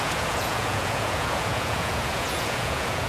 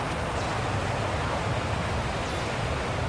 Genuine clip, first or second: second